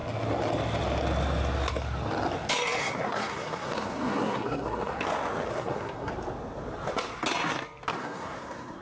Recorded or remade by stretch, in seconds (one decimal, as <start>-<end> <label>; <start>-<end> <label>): 0.0-2.8 recorded; 2.8-5.0 remade; 5.0-5.5 recorded; 5.5-6.1 remade; 6.1-8.0 recorded; 8.0-8.8 remade